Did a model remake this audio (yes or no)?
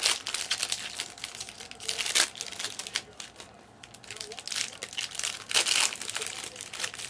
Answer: no